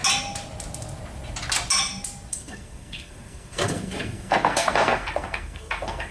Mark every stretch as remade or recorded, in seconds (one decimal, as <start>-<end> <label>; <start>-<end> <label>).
0.0-2.3 recorded; 2.3-6.1 remade